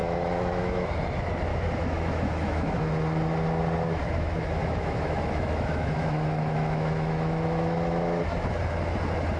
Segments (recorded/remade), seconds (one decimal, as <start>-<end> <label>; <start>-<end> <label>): 0.0-0.9 remade; 0.9-1.5 recorded; 1.5-2.8 remade; 2.8-4.0 recorded; 4.0-8.2 remade; 8.2-9.4 recorded